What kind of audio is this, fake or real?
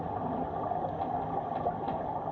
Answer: real